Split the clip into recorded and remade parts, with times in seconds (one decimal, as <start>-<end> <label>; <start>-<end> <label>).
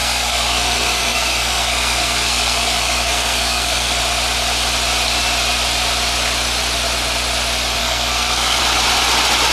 0.0-4.0 remade; 4.0-7.8 recorded; 7.8-8.6 remade; 8.6-9.5 recorded